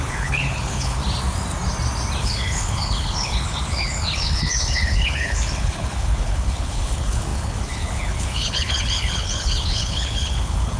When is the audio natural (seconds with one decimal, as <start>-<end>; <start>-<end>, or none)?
1.0-2.2